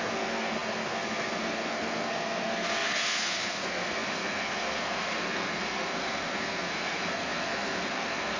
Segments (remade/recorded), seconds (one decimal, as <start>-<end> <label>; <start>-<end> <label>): 0.0-8.4 remade